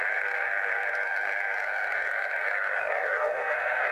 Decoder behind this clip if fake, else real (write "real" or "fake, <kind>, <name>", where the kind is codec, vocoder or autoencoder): fake, codec, SNAC